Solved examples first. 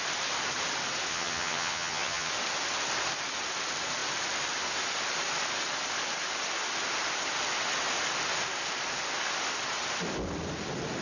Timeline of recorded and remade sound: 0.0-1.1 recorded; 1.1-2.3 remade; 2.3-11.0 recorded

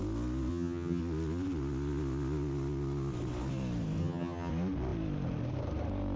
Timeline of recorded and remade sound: 0.0-0.5 recorded; 0.5-1.0 remade; 1.0-4.0 recorded; 4.0-4.5 remade; 4.5-6.2 recorded

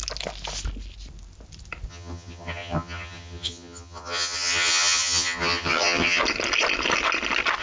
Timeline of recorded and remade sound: 0.0-1.9 recorded; 1.9-6.2 remade; 6.2-7.6 recorded

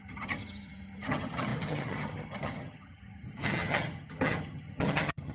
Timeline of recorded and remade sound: 0.0-5.3 remade

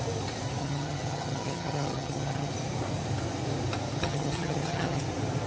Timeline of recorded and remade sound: 0.0-0.6 recorded; 0.6-2.5 remade; 2.5-4.0 recorded; 4.0-5.0 remade; 5.0-5.5 recorded

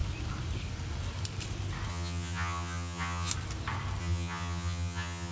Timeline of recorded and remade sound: 0.0-1.9 recorded; 1.9-3.3 remade; 3.3-4.0 recorded; 4.0-5.3 remade

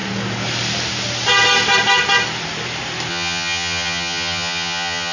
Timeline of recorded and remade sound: 0.0-3.1 recorded; 3.1-5.1 remade

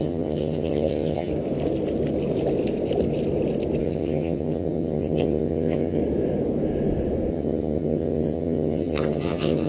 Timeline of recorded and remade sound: 0.0-1.3 remade; 1.3-3.8 recorded; 3.8-6.0 remade; 6.0-7.3 recorded; 7.3-9.7 remade